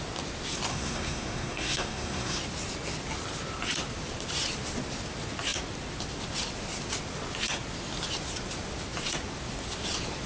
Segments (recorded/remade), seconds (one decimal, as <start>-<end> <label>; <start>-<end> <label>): 0.0-0.7 recorded; 0.7-2.4 remade; 2.4-10.3 recorded